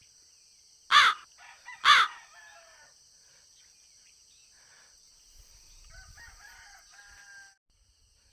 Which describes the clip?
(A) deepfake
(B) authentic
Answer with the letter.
B